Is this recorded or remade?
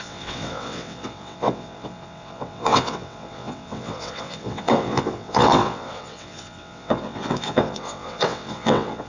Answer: remade